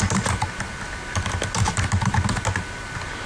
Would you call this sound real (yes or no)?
yes